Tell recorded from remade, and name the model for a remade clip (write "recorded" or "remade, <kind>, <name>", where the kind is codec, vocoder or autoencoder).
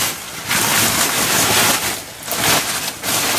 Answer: recorded